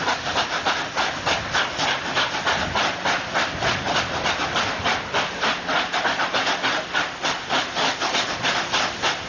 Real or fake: real